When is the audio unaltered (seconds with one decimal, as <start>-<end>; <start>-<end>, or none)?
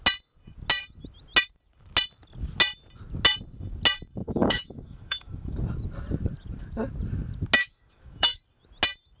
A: 0.0-4.2; 5.6-7.6; 8.4-9.2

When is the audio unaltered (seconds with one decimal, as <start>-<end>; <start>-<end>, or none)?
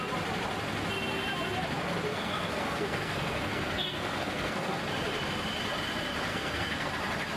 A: 0.0-2.1; 4.8-6.3; 6.9-7.4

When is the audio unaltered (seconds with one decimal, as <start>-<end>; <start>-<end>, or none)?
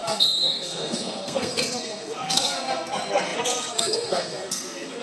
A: none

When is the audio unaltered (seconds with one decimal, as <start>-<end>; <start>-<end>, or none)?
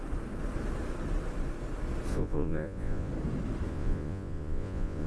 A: 0.0-2.1; 3.1-3.7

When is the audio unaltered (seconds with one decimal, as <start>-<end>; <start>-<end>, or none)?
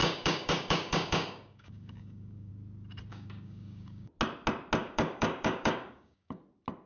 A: 2.5-3.1; 4.1-4.8; 6.4-6.9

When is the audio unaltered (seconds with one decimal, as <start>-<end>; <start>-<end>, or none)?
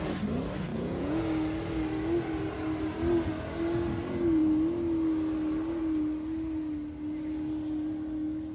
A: 0.0-0.7; 1.2-8.5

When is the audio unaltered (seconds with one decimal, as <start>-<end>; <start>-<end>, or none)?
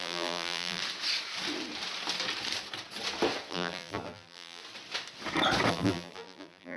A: 0.8-3.5; 4.6-5.7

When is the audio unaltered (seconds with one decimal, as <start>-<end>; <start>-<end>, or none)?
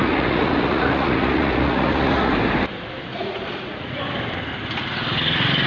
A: 2.3-3.1; 4.0-5.7